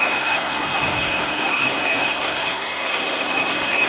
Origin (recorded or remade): remade